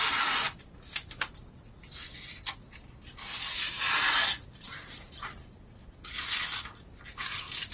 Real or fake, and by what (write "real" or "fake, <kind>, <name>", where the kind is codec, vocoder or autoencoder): real